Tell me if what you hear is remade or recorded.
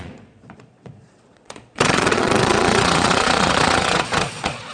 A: remade